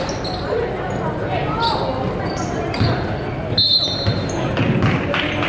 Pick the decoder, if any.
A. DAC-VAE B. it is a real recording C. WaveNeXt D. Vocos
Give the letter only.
B